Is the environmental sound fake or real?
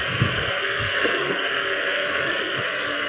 fake